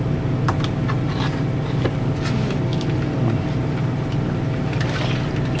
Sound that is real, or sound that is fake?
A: real